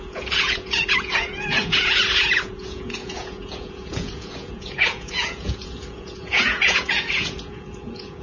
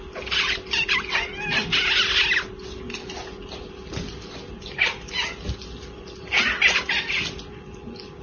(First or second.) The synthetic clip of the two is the first